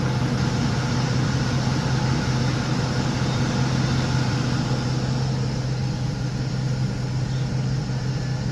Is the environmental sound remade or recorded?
recorded